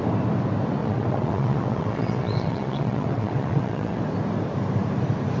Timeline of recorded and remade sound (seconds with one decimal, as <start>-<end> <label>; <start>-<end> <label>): 0.0-0.8 recorded; 0.8-4.0 remade; 4.0-5.4 recorded